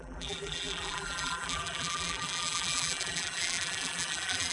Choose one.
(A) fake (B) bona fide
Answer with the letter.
A